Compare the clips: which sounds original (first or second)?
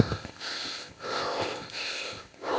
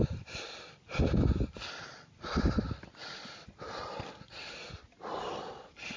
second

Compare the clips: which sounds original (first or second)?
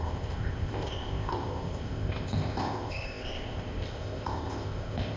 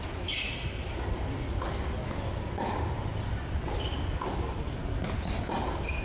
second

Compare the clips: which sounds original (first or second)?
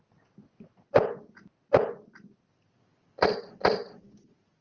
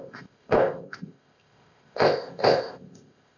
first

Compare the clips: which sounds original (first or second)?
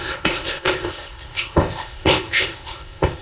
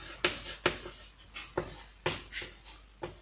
second